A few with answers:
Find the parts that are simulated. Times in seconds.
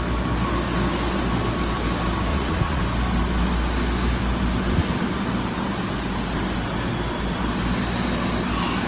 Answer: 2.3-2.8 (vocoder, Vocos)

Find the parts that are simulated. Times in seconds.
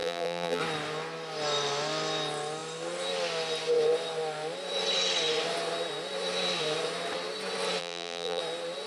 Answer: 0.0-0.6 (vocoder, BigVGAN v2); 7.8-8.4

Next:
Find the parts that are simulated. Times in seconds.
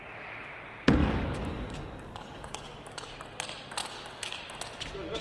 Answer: 1.0-3.1 (codec, DAC); 3.8-4.4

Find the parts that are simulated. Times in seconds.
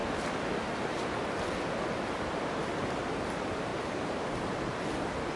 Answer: none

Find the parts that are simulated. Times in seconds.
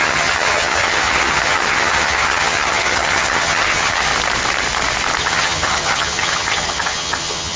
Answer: 0.0-4.1 (vocoder, HiFi-GAN); 5.2-7.6